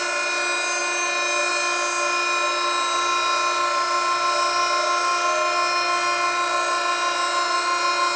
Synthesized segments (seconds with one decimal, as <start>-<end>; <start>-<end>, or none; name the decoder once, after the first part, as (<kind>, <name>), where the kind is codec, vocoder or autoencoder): none